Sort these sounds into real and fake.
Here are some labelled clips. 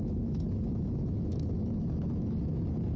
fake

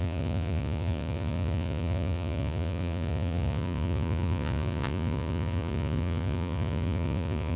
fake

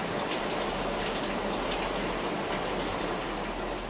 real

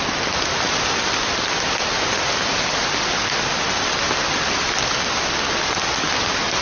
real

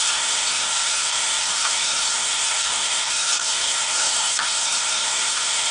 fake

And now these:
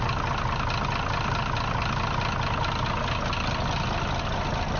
real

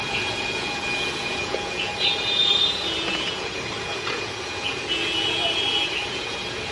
fake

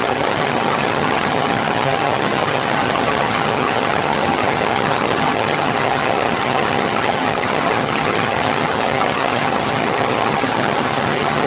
fake